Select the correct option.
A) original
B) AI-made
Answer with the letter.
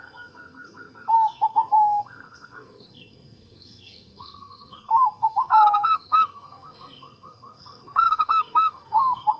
B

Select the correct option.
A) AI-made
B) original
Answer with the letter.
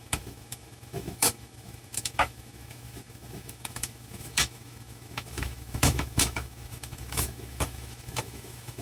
A